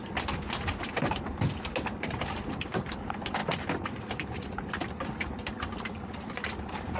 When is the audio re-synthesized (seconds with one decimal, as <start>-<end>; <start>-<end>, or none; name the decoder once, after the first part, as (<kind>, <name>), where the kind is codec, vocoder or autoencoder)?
0.0-7.0 (vocoder, BigVGAN v2)